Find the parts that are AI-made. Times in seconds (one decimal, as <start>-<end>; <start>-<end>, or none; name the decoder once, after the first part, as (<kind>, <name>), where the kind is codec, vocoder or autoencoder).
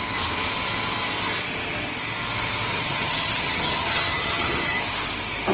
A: 2.7-4.8 (vocoder, HiFi-GAN)